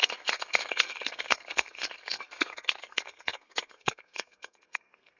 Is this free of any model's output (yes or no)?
no